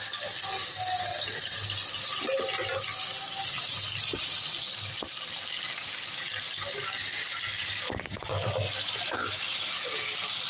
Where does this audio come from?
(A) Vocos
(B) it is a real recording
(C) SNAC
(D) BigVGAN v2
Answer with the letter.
B